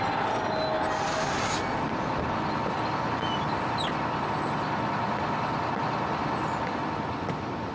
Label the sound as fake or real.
real